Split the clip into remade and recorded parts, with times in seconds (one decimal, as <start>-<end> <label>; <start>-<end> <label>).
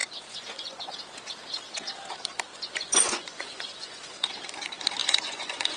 0.0-1.0 remade; 1.0-2.5 recorded; 2.5-4.1 remade; 4.1-5.0 recorded; 5.0-5.8 remade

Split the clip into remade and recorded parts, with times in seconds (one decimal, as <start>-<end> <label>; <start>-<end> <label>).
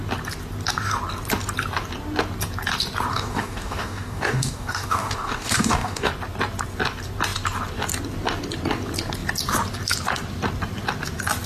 0.0-3.1 recorded; 3.1-6.1 remade; 6.1-11.5 recorded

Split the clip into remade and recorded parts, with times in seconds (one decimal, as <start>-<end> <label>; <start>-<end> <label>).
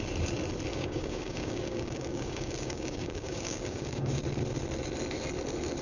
0.0-0.7 recorded; 0.7-4.2 remade; 4.2-5.8 recorded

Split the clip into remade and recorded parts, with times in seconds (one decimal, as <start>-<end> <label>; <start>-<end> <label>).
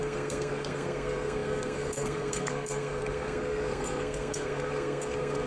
0.0-5.5 remade